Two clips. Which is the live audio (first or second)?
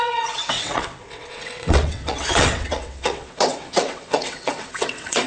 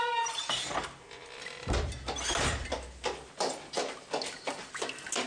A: second